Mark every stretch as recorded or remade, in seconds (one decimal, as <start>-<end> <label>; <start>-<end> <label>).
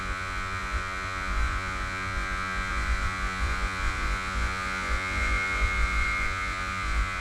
0.0-7.2 remade